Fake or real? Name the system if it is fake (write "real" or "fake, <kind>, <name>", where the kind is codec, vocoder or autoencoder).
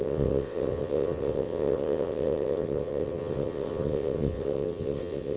fake, vocoder, WaveNeXt